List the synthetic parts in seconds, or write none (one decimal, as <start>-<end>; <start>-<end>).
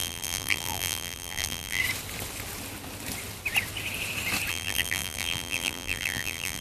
0.0-1.8; 4.5-6.6